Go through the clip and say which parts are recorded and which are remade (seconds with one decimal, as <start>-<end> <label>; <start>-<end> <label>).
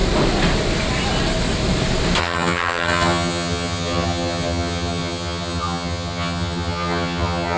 0.0-2.2 recorded; 2.2-7.6 remade